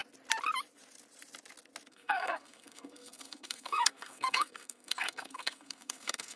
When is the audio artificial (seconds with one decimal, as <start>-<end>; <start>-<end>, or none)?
1.9-6.4

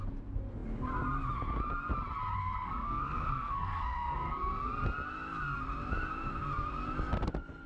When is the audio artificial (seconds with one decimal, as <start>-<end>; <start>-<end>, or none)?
2.4-4.7